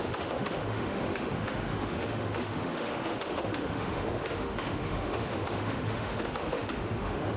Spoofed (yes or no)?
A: yes